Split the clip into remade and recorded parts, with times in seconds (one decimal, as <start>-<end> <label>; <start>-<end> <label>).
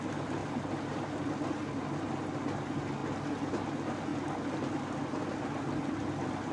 0.0-6.5 recorded